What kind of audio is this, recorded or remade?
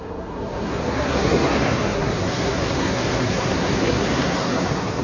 remade